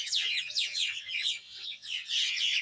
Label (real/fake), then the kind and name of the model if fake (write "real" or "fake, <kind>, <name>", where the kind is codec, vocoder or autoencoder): fake, vocoder, WaveNeXt